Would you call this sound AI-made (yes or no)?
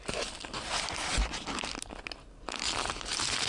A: no